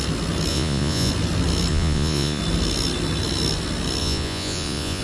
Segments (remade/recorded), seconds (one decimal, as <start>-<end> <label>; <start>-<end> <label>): 0.0-0.5 recorded; 0.5-1.1 remade; 1.1-1.7 recorded; 1.7-2.4 remade; 2.4-4.0 recorded; 4.0-5.0 remade